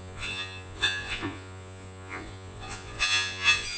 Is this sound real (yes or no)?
no